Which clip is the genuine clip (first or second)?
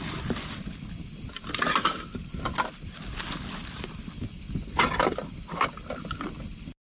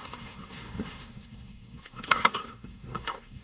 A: first